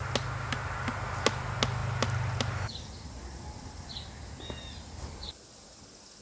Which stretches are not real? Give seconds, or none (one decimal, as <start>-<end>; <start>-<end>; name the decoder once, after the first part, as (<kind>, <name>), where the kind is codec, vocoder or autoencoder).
none